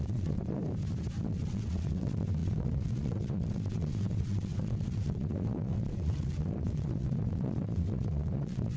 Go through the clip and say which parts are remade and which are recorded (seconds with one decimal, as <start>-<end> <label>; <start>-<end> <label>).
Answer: 0.0-0.6 remade; 0.6-1.2 recorded; 1.2-8.8 remade